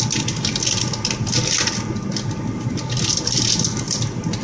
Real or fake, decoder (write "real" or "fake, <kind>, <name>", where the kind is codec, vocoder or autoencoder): real